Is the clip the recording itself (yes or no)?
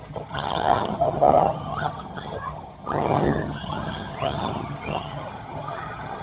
no